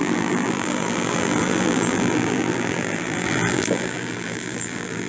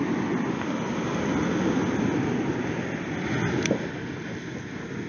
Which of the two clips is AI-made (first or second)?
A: first